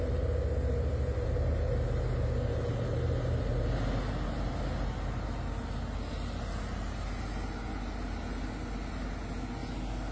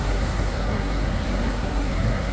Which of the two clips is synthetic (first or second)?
second